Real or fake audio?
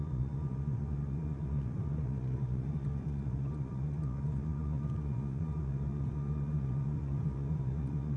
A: fake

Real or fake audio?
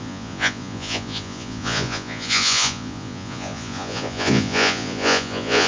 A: fake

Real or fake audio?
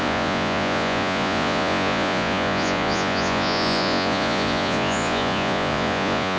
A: fake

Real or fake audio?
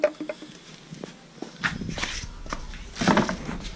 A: real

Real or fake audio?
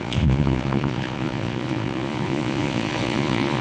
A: fake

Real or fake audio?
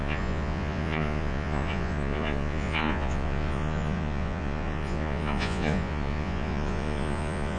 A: fake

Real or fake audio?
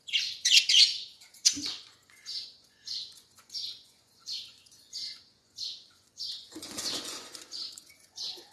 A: fake